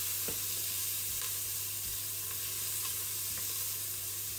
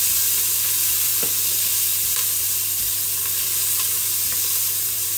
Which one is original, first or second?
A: first